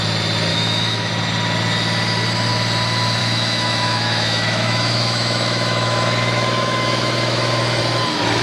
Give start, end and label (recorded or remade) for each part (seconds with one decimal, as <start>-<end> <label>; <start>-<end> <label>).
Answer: 0.0-0.5 recorded; 0.5-1.1 remade; 1.1-3.2 recorded; 3.2-7.8 remade; 7.8-8.4 recorded